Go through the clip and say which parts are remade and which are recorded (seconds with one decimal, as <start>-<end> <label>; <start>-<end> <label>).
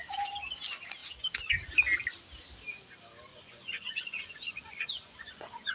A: 0.0-3.3 recorded; 3.3-5.7 remade